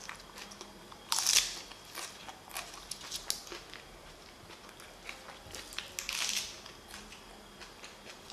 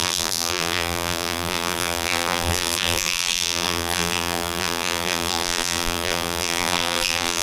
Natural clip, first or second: first